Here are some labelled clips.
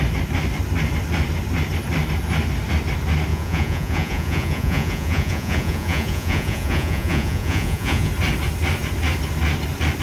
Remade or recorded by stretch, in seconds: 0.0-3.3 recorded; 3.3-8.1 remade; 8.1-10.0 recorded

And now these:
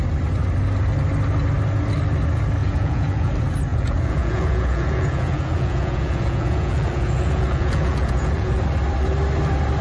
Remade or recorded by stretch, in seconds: 0.0-2.6 recorded; 2.6-3.3 remade; 3.3-3.7 recorded; 3.7-8.6 remade; 8.6-9.8 recorded

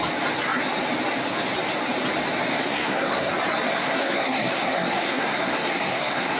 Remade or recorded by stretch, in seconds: 0.0-2.5 recorded; 2.5-3.3 remade; 3.3-3.7 recorded; 3.7-6.4 remade

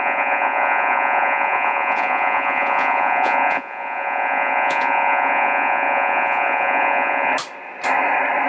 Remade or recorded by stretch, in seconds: 0.0-7.3 remade; 7.3-8.5 recorded

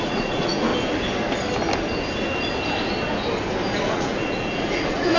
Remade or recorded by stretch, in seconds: 0.0-0.7 remade; 0.7-3.8 recorded; 3.8-5.2 remade